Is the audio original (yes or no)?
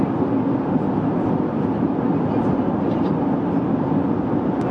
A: yes